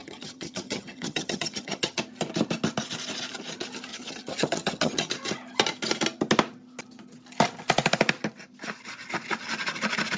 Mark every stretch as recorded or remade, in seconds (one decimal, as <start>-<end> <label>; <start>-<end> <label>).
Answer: 0.0-2.0 remade; 2.0-3.9 recorded; 3.9-5.1 remade; 5.1-10.2 recorded